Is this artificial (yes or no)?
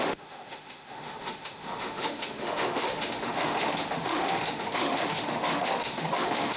yes